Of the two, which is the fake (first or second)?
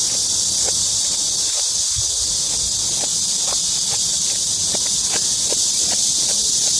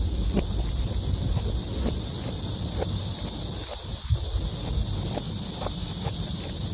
second